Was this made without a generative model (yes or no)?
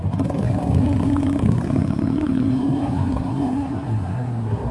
no